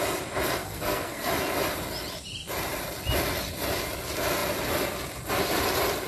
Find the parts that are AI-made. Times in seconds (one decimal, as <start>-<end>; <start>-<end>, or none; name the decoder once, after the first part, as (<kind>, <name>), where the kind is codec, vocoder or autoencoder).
0.6-1.3 (codec, SNAC)